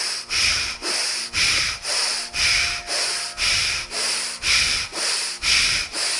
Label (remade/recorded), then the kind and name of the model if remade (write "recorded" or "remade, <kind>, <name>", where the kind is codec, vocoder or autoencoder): recorded